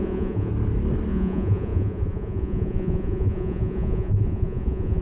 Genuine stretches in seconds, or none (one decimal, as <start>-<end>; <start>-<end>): 0.5-1.1

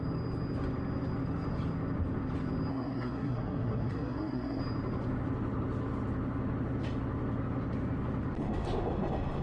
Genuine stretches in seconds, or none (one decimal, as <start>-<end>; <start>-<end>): 0.0-2.7; 4.6-9.4